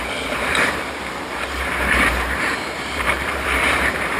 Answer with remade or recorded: remade